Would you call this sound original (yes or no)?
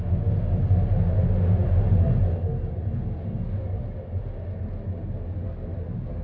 yes